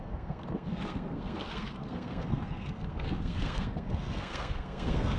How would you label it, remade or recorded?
remade